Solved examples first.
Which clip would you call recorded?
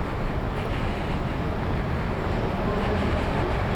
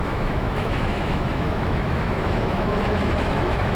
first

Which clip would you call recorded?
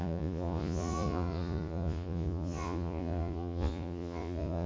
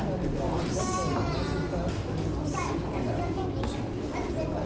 second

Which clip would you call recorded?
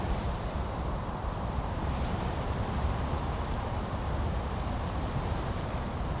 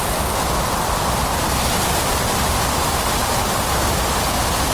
second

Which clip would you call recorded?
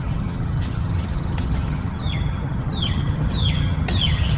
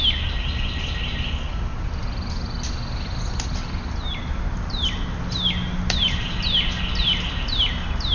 second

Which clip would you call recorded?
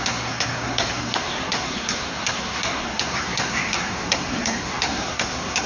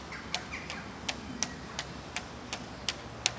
second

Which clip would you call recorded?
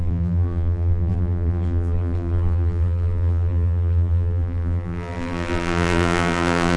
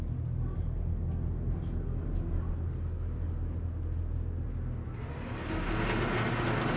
second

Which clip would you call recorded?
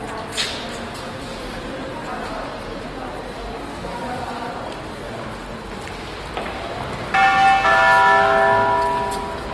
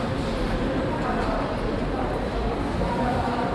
first